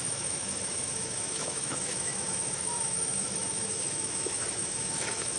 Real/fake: fake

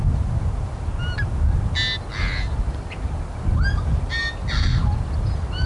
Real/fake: real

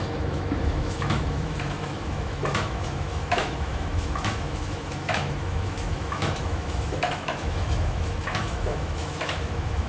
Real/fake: fake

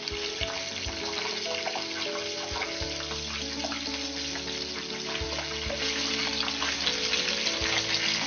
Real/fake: real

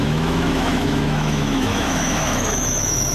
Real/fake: fake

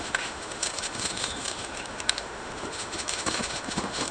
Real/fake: fake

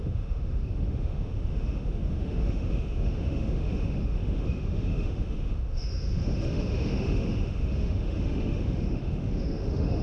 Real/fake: fake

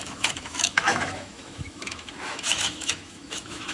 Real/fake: fake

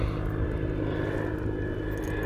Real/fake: real